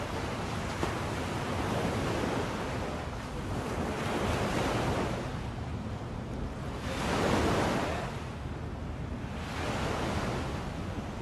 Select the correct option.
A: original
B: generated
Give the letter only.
A